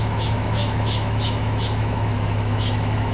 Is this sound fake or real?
fake